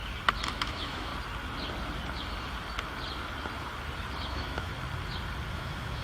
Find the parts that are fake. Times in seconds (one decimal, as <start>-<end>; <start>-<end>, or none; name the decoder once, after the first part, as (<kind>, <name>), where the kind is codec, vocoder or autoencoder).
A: 0.5-1.1 (autoencoder, DAC-VAE); 4.3-4.7; 5.5-6.0